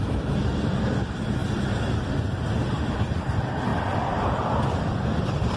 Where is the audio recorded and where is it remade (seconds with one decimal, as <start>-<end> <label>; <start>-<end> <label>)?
0.0-1.4 remade; 1.4-2.1 recorded; 2.1-5.6 remade